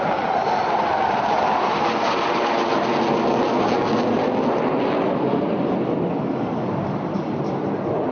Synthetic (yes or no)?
no